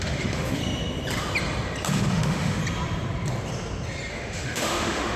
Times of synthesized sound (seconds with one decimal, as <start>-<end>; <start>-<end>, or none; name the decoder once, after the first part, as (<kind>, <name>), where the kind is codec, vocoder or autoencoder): 0.0-0.6 (autoencoder, DAC-VAE); 2.1-2.6; 4.1-5.2